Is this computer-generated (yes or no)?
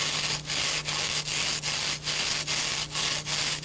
no